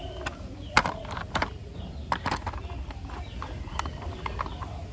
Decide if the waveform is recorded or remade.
recorded